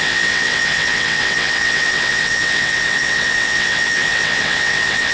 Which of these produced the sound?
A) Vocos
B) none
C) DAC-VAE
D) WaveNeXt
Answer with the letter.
D